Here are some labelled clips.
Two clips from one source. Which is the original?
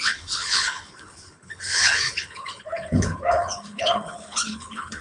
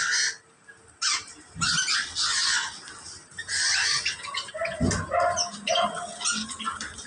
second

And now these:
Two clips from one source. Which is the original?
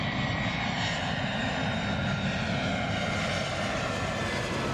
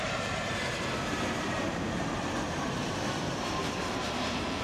first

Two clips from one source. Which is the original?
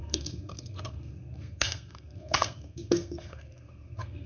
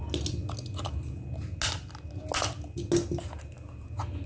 second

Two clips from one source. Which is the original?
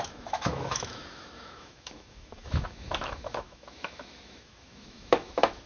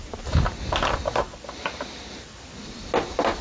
second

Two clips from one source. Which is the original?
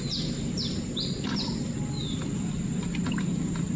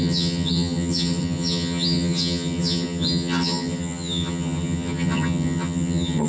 first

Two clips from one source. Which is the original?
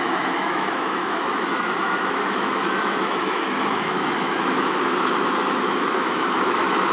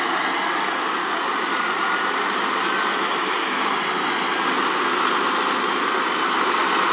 second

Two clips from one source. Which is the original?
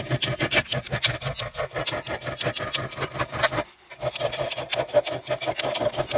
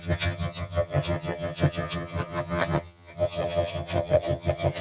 first